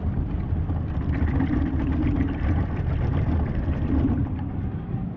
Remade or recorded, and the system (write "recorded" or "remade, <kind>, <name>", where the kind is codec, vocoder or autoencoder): recorded